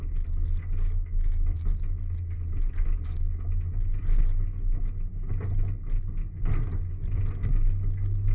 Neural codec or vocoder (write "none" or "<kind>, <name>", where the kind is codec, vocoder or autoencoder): none